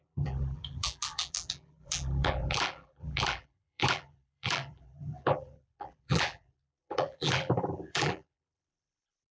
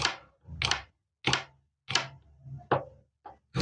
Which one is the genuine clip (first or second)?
second